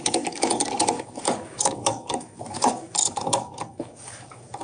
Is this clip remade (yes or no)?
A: yes